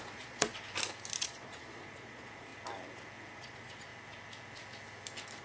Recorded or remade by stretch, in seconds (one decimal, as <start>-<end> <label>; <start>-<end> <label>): 0.0-0.5 remade; 0.5-1.2 recorded; 1.2-2.5 remade; 2.5-3.3 recorded; 3.3-3.9 remade; 3.9-5.4 recorded